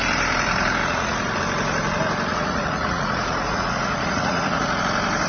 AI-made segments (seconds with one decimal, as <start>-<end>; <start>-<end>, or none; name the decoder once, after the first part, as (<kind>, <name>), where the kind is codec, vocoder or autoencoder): 0.8-1.4 (vocoder, Vocos); 2.3-4.8